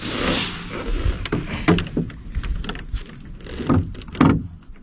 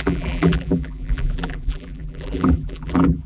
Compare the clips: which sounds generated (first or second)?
second